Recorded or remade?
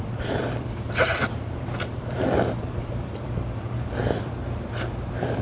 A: remade